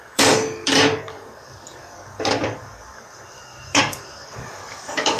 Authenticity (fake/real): fake